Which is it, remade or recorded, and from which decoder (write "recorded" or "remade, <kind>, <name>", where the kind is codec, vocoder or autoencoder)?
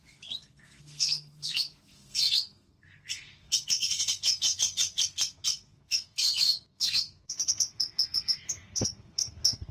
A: remade, codec, SNAC